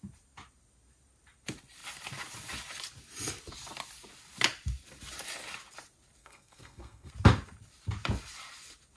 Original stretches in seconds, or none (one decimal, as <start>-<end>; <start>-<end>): 0.0-6.2; 7.1-9.0

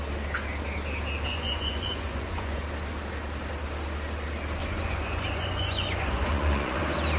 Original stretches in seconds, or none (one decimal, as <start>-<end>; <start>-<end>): 0.0-1.3; 2.6-4.6; 6.8-7.2

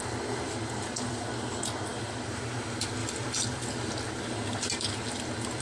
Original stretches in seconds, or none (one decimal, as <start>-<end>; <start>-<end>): 0.0-5.6

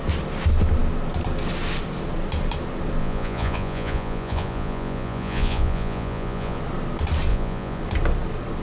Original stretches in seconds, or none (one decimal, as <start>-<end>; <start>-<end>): 0.0-3.0; 6.6-7.3; 7.8-8.6